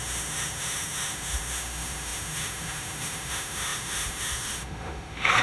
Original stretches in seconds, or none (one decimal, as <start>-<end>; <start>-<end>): none